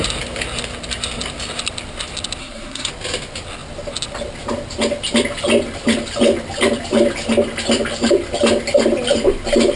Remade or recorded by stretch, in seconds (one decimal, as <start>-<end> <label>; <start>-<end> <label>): 0.0-2.4 recorded; 2.4-2.9 remade; 2.9-9.8 recorded